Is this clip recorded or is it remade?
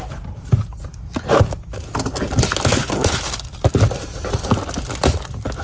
recorded